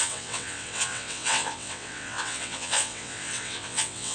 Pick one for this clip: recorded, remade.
remade